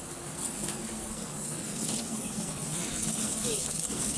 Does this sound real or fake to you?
fake